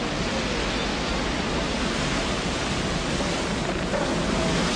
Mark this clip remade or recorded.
recorded